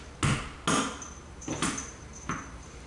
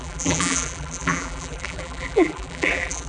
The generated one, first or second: second